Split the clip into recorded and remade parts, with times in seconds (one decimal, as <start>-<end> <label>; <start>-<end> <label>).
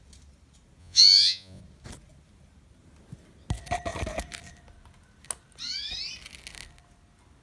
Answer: 0.0-0.8 recorded; 0.8-1.6 remade; 1.6-7.4 recorded